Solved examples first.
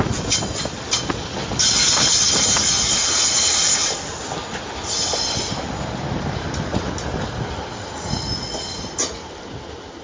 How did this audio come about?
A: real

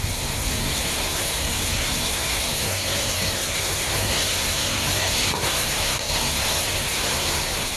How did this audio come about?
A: fake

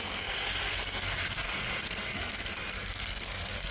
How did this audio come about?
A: fake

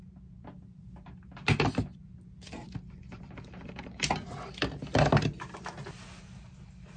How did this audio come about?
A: real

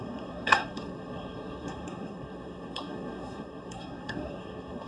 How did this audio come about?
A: fake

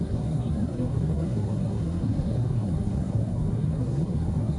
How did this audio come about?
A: fake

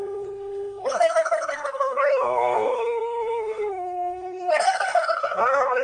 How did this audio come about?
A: fake